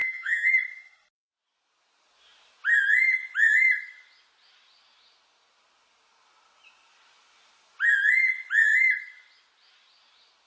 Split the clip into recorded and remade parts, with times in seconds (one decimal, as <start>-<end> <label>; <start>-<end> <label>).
0.0-0.5 remade; 0.5-10.5 recorded